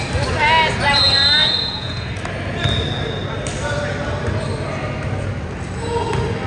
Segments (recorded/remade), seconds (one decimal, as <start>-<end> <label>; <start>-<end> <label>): 0.0-1.4 recorded; 1.4-2.1 remade; 2.1-6.5 recorded